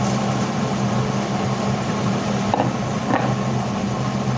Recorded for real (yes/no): yes